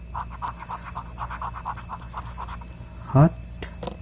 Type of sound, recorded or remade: recorded